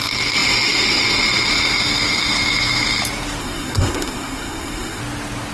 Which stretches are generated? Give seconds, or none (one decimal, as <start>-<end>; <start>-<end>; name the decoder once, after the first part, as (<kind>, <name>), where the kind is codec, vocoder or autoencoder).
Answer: 3.4-5.0 (codec, SNAC)